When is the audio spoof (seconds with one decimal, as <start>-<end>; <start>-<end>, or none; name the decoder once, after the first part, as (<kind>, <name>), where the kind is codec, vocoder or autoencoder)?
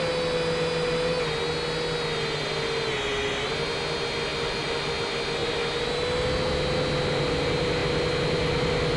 4.3-4.9 (vocoder, BigVGAN v2)